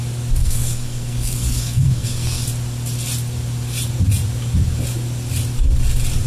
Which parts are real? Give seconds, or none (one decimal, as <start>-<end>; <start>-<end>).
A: 0.0-0.4; 2.4-6.3